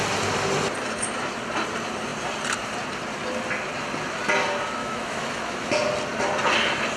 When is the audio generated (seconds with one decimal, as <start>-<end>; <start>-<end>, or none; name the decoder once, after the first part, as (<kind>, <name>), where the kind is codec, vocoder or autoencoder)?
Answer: 4.8-5.7 (autoencoder, DAC-VAE)